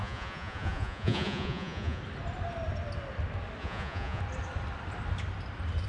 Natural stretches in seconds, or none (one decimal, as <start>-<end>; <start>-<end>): 2.0-3.6; 4.2-5.9